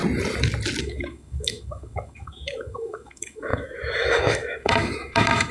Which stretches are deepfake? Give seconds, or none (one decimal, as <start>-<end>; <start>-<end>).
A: 0.8-5.5